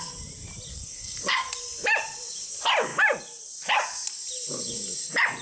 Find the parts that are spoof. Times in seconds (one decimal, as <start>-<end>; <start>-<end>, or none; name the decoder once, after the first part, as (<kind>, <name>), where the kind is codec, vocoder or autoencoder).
0.7-1.5 (codec, SNAC)